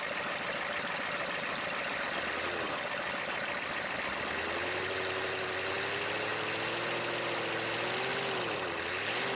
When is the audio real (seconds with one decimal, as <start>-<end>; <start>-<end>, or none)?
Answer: 0.0-9.4